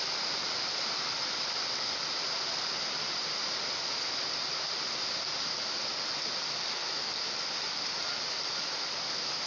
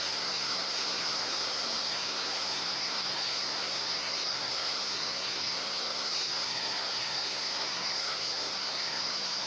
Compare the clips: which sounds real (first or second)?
first